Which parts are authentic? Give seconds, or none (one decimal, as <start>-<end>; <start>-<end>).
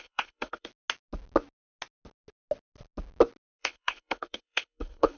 0.7-3.6